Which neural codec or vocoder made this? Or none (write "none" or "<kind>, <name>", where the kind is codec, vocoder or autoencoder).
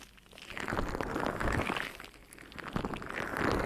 none